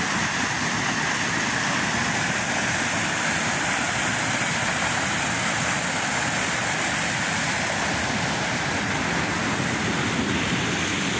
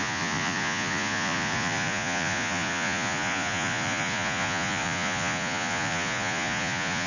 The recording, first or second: first